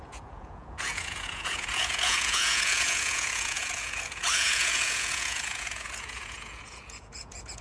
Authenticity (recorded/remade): remade